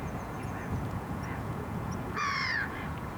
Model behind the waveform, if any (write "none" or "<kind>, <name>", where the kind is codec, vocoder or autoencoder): vocoder, Vocos